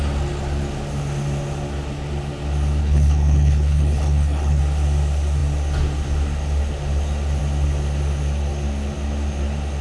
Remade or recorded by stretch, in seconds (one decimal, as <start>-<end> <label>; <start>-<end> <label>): 0.0-2.8 recorded; 2.8-4.6 remade; 4.6-9.8 recorded